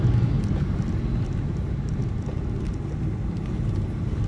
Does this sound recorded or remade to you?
recorded